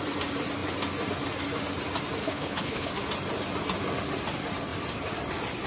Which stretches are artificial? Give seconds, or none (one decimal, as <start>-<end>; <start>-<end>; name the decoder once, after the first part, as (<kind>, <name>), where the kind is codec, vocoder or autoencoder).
2.2-2.9 (codec, HILCodec)